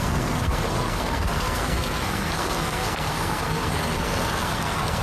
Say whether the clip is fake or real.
fake